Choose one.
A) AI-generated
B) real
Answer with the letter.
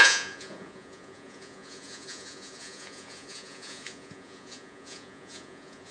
A